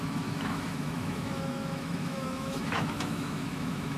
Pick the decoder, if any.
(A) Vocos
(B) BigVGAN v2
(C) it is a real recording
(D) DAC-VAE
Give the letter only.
D